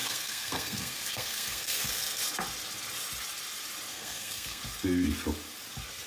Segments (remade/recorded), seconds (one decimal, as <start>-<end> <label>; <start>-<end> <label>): 0.0-2.2 remade; 2.2-3.9 recorded; 3.9-4.6 remade; 4.6-6.1 recorded